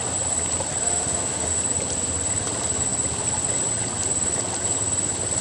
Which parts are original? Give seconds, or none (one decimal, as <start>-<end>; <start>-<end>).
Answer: 0.0-0.9; 1.6-5.4